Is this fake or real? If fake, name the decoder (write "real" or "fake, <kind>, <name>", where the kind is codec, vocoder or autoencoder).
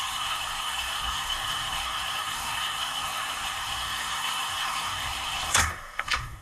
fake, codec, SNAC